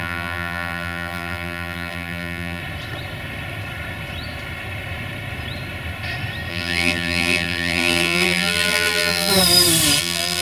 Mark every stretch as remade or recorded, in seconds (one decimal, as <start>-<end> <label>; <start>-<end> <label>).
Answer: 0.0-2.6 remade; 2.6-6.5 recorded; 6.5-9.3 remade; 9.3-10.0 recorded; 10.0-10.4 remade